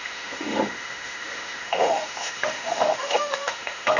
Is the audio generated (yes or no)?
yes